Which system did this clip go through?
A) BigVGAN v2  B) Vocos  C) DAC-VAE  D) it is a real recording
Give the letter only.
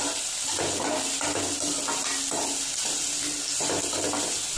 D